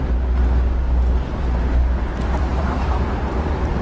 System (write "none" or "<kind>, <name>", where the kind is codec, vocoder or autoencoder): none